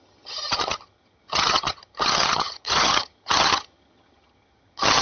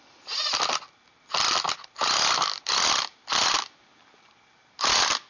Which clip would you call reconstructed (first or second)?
first